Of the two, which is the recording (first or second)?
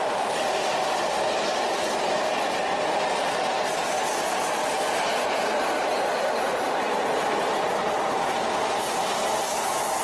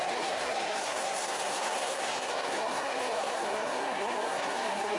first